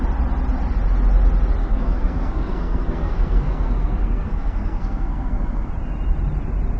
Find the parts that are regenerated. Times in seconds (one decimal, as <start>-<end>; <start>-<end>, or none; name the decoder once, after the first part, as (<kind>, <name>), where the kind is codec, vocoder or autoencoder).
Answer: 1.6-5.7 (codec, SNAC)